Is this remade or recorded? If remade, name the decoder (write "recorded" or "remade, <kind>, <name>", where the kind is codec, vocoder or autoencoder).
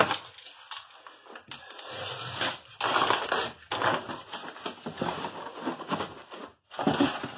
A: recorded